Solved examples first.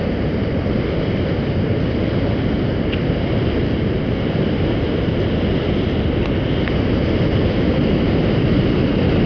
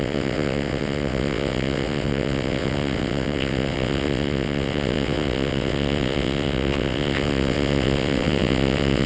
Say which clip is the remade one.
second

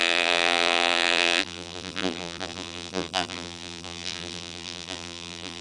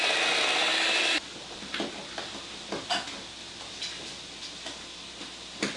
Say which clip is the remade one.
first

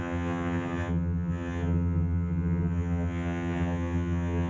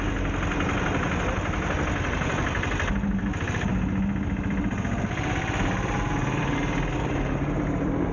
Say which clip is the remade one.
first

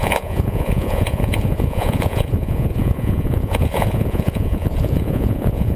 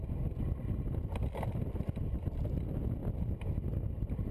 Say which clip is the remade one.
first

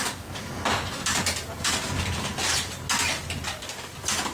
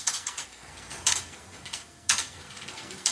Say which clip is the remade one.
second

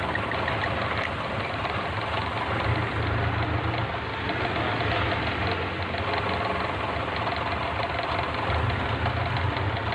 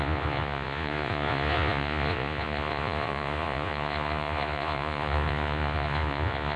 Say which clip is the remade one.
second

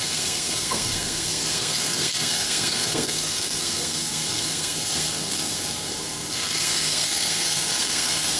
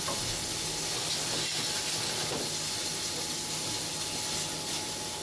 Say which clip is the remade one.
first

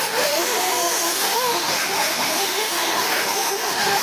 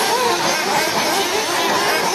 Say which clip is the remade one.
first